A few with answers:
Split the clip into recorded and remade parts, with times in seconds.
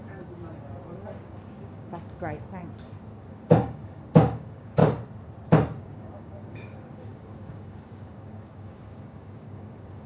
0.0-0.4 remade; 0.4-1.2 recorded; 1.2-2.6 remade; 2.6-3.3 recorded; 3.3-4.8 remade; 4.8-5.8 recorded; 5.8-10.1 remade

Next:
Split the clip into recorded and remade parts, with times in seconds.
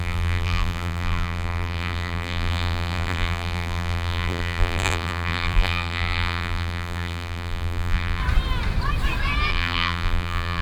0.0-8.2 remade; 8.2-9.5 recorded; 9.5-10.6 remade